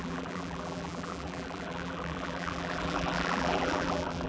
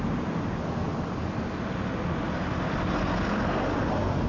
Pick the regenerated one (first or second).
first